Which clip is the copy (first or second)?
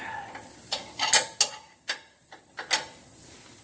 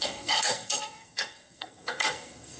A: second